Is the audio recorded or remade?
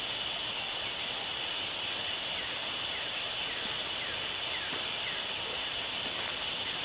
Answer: recorded